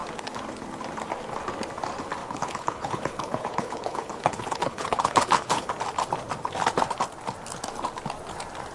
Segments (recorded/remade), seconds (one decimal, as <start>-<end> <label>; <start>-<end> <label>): 0.0-2.2 recorded; 2.2-5.7 remade; 5.7-8.7 recorded